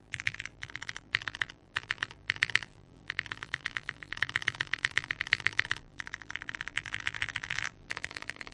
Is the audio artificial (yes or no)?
yes